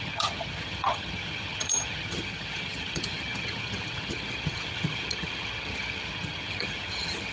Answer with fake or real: fake